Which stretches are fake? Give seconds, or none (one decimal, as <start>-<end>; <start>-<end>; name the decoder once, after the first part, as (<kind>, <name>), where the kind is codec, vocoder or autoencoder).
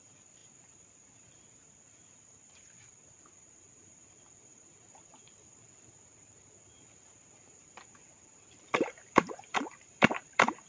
0.0-10.7 (vocoder, BigVGAN v2)